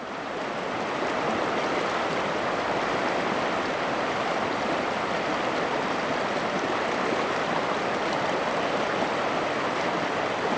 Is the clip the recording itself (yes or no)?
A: yes